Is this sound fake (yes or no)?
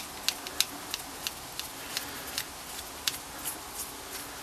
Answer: no